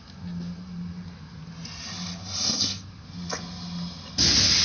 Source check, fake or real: real